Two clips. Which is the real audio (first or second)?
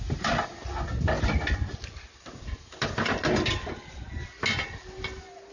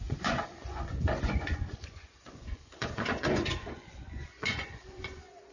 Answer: first